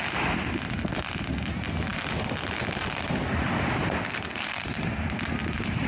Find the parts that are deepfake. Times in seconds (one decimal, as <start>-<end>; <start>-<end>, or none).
1.9-5.4